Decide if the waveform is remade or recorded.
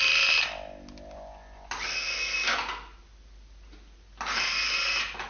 recorded